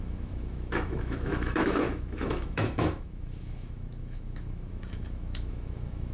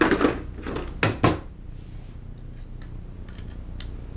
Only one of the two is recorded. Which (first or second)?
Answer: second